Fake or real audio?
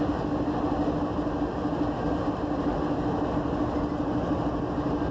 real